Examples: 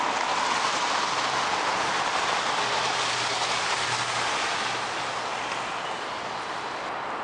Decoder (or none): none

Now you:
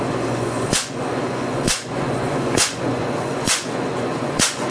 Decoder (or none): vocoder, Vocos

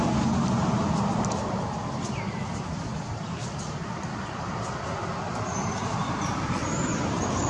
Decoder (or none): vocoder, BigVGAN v2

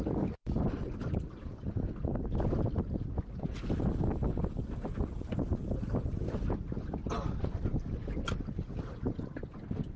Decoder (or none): none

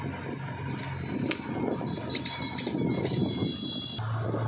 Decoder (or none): none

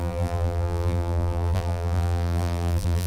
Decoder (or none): vocoder, BigVGAN v2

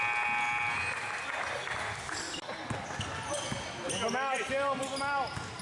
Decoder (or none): none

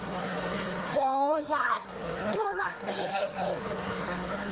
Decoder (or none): codec, SNAC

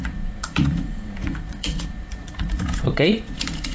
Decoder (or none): vocoder, Vocos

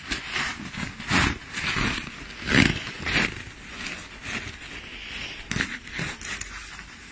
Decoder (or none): none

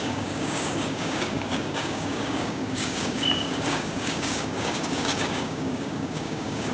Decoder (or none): codec, DAC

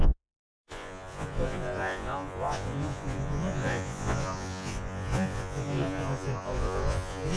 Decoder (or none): vocoder, Vocos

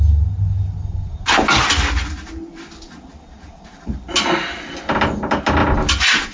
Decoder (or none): none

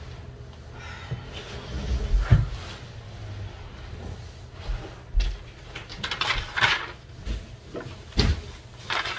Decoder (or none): none